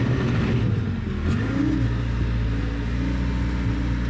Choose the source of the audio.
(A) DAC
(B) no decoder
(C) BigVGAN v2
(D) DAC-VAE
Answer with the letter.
B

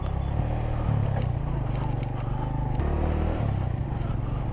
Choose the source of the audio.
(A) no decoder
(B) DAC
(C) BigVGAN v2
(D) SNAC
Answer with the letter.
A